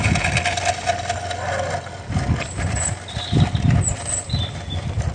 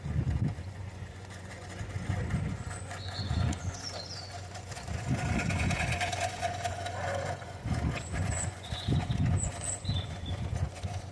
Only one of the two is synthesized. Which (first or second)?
second